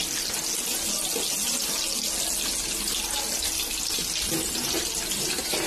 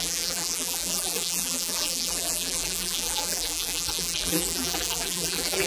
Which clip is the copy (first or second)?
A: second